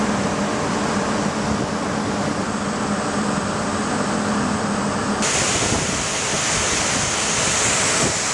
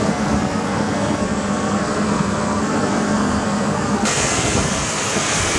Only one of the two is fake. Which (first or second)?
second